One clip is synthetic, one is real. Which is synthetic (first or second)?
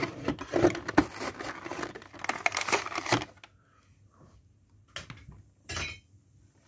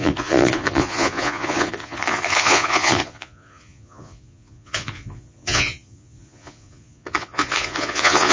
second